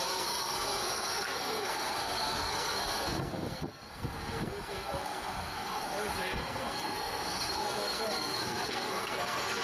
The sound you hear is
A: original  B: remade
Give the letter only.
B